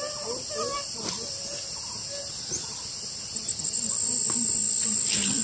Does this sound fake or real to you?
real